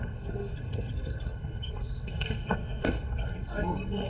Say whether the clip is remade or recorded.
remade